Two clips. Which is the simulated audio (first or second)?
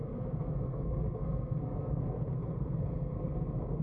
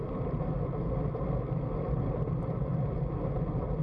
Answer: first